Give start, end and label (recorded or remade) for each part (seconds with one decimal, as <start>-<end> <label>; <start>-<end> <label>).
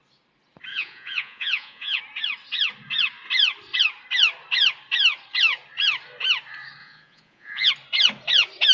0.0-0.7 recorded; 0.7-2.0 remade; 2.0-6.8 recorded; 6.8-7.7 remade; 7.7-8.7 recorded